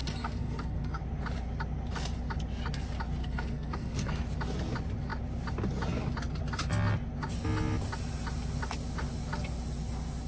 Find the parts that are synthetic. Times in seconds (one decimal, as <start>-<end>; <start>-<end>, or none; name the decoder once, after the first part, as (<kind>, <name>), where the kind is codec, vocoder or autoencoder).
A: 0.0-1.0 (codec, SNAC); 3.2-4.1